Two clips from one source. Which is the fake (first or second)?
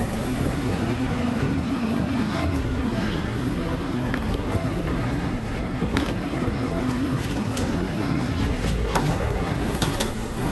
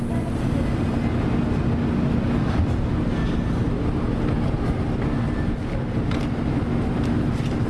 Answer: first